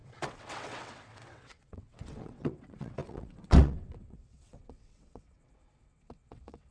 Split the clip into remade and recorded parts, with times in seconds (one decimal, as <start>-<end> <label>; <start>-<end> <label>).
0.0-6.7 remade